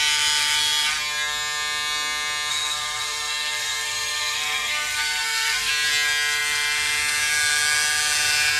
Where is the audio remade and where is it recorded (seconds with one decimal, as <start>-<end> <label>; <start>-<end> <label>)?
0.0-2.5 recorded; 2.5-5.7 remade; 5.7-8.6 recorded